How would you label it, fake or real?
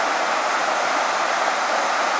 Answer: real